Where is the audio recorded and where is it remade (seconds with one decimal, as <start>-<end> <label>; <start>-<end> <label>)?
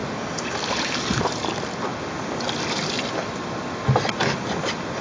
0.0-1.9 recorded; 1.9-5.0 remade